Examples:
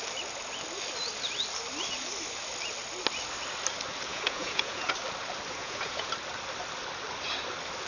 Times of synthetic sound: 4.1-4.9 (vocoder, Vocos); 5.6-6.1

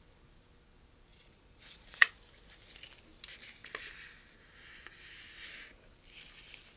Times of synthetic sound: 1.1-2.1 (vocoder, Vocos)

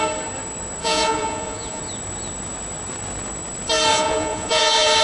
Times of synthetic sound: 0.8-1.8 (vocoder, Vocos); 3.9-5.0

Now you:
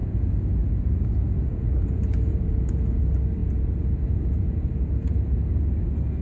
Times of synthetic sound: 0.0-3.0 (vocoder, Vocos); 3.4-4.6

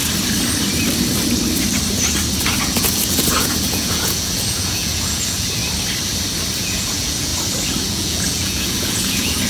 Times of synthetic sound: 2.6-5.6 (vocoder, Vocos); 6.6-7.3; 7.9-9.5

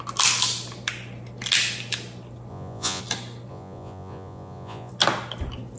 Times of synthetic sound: 2.5-3.0 (vocoder, Vocos); 3.5-4.9

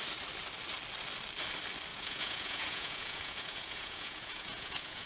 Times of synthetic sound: 1.9-5.1 (vocoder, Vocos)